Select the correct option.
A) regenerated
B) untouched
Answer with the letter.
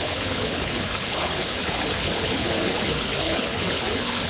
A